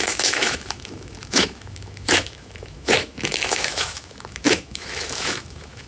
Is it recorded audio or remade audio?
remade